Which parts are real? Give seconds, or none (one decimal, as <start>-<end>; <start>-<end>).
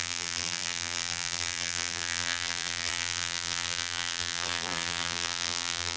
none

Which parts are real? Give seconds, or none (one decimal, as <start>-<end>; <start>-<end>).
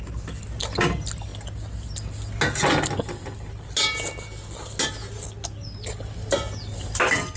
0.0-7.4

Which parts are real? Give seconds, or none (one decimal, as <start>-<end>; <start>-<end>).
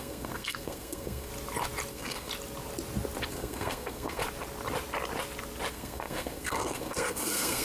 1.3-1.9; 2.3-3.3; 4.2-5.7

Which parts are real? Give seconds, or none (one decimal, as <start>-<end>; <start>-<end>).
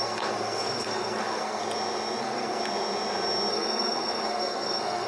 1.6-2.2; 2.6-3.5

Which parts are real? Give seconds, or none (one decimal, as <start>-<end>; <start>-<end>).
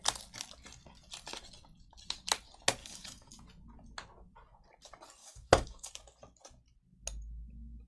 0.0-2.8; 3.3-5.2; 5.9-7.9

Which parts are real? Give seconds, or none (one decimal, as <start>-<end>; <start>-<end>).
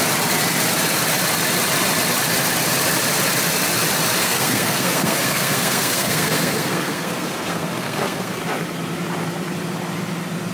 0.0-4.2; 8.4-10.5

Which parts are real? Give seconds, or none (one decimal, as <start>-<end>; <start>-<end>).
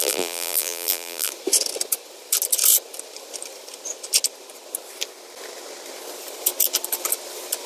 1.3-7.7